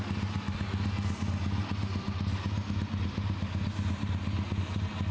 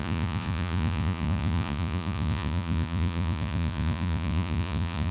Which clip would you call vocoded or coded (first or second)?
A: second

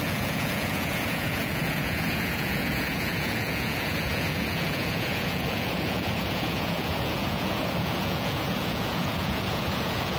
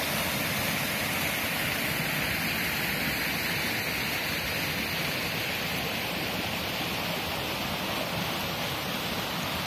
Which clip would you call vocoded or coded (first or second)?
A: first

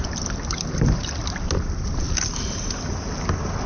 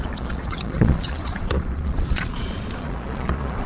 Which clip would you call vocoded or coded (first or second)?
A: second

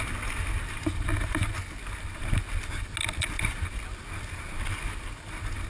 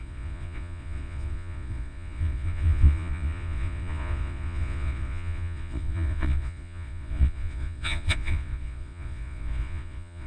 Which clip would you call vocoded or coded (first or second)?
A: second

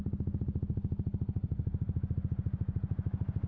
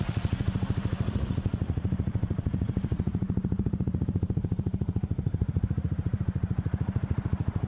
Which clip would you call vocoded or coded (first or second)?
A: second